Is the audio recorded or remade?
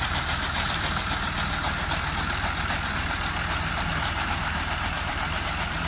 remade